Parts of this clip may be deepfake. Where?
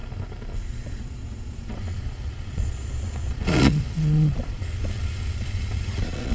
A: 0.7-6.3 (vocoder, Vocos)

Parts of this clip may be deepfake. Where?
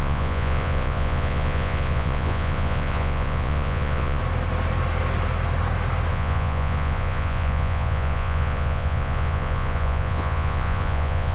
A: 0.0-4.2 (vocoder, Vocos); 6.1-11.3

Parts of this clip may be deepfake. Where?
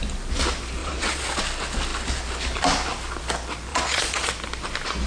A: 0.8-1.4 (vocoder, Vocos); 3.7-4.3